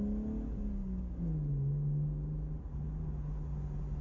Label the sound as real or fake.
real